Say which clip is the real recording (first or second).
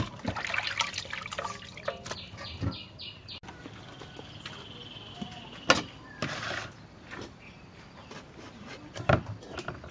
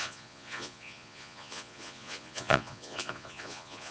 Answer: first